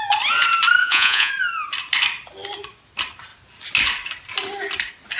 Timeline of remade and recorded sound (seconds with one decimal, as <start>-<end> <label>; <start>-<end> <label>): 0.0-0.8 recorded; 0.8-1.3 remade; 1.3-5.2 recorded